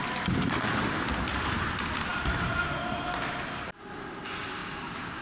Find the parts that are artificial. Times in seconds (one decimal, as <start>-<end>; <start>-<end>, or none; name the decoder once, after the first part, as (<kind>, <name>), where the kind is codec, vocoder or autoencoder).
2.1-2.6 (vocoder, BigVGAN v2)